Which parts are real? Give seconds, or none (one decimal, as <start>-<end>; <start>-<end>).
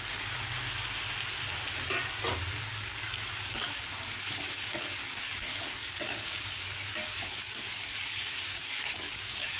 0.5-2.5